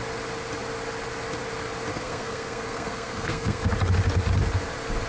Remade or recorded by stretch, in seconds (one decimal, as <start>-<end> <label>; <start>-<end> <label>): 0.0-1.9 recorded; 1.9-3.7 remade; 3.7-5.1 recorded